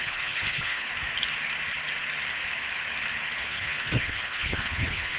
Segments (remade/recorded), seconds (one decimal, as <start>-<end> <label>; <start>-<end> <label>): 0.0-0.9 remade; 0.9-3.4 recorded; 3.4-5.2 remade